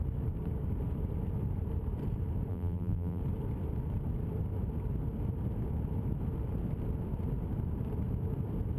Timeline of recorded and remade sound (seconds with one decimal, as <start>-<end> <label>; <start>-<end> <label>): 0.0-2.5 recorded; 2.5-3.2 remade; 3.2-8.8 recorded